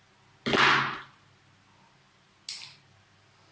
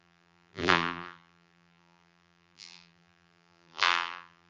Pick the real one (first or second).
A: first